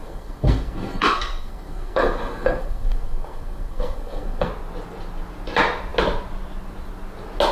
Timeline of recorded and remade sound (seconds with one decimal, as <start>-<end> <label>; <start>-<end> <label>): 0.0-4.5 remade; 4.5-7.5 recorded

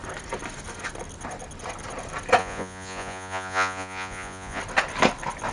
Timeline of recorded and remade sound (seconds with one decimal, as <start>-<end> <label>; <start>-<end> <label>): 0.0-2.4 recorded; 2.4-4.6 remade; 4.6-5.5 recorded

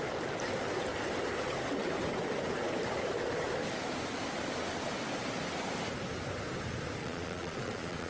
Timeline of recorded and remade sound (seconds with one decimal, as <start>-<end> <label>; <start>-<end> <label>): 0.0-7.0 recorded; 7.0-8.1 remade

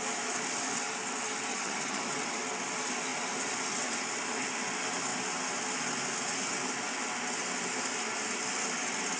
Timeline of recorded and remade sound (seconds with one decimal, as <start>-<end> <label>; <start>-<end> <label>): 0.0-1.5 recorded; 1.5-2.0 remade; 2.0-9.2 recorded

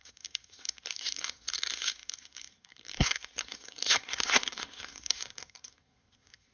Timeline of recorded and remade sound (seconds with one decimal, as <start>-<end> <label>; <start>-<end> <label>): 0.0-6.5 remade